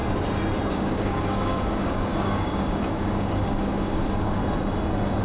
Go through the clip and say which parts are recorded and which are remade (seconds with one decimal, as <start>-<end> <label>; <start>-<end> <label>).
0.0-0.7 recorded; 0.7-4.4 remade; 4.4-5.2 recorded